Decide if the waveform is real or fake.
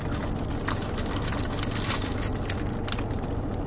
real